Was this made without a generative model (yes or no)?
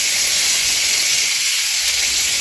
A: no